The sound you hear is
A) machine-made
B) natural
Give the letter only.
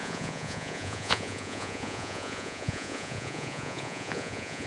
A